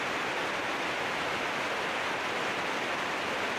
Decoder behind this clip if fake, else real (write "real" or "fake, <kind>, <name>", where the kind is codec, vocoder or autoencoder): real